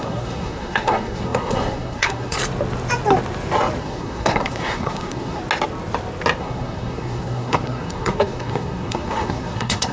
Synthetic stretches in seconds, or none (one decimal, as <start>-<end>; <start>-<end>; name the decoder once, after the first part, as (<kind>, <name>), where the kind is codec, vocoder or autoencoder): 0.0-2.4 (codec, SNAC); 3.8-5.4; 6.4-9.9